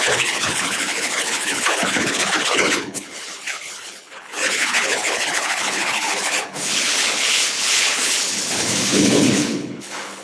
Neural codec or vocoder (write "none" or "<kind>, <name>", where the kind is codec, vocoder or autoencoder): codec, HILCodec